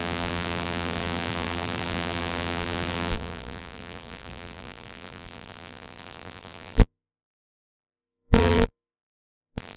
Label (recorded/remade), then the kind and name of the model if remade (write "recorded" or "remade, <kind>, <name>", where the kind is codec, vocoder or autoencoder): remade, vocoder, BigVGAN v2